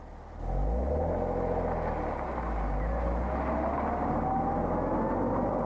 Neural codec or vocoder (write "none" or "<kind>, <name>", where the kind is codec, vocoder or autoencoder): none